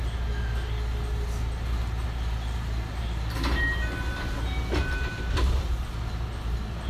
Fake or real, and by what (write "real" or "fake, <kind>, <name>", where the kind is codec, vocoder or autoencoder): real